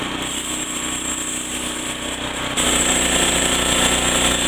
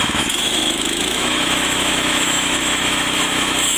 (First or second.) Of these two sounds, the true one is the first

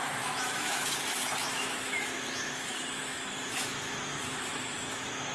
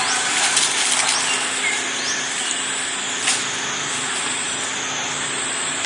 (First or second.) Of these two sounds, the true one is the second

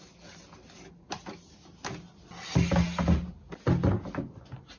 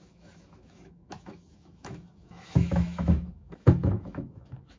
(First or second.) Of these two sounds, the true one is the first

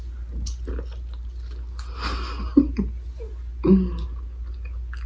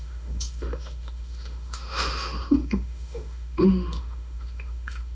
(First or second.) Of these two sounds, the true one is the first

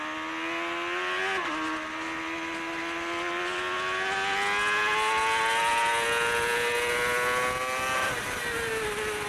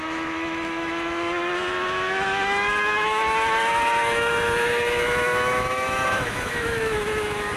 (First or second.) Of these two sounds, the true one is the first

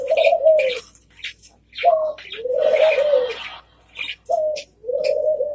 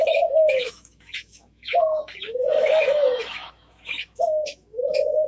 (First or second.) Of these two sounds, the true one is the first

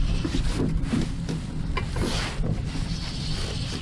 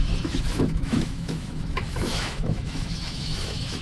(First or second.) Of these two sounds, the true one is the first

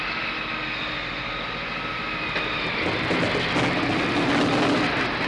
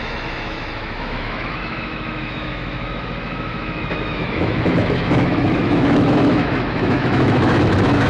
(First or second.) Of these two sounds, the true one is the first